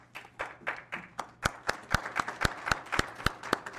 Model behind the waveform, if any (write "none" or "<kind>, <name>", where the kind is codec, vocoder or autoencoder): none